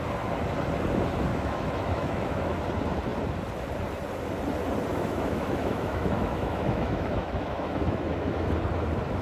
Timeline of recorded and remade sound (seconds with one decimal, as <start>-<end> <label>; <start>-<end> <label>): 0.0-1.3 recorded; 1.3-2.6 remade; 2.6-4.9 recorded; 4.9-8.5 remade; 8.5-9.2 recorded